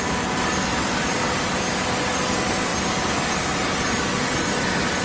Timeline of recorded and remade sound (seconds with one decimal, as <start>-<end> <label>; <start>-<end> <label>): 0.0-5.0 recorded